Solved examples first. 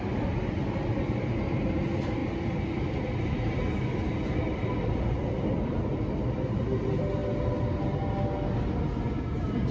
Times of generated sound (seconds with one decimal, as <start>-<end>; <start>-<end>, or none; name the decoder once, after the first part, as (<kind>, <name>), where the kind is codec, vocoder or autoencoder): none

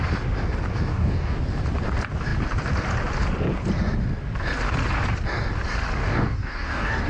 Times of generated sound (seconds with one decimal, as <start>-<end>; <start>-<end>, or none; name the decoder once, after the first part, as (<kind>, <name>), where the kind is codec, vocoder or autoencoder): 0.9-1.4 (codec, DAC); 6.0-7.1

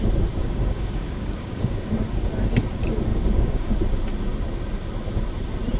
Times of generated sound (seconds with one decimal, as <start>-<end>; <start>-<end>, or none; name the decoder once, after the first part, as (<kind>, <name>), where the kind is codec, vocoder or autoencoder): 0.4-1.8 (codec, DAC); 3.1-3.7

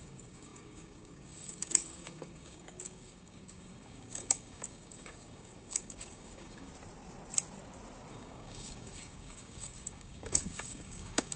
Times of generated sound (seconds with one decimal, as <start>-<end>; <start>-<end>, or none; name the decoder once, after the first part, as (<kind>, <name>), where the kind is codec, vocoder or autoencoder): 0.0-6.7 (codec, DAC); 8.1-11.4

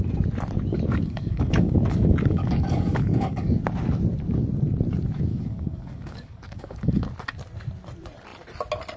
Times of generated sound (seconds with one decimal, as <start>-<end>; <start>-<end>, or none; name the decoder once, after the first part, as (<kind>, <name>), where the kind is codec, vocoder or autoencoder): 0.7-3.5 (codec, DAC); 5.3-7.1